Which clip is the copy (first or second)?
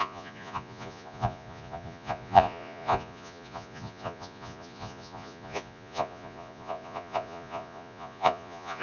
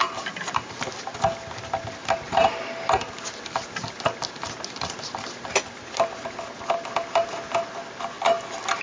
first